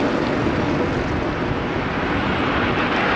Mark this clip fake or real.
real